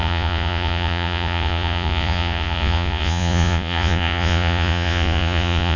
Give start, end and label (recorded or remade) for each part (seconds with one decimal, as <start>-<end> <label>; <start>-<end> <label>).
0.0-5.8 remade